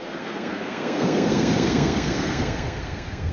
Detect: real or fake fake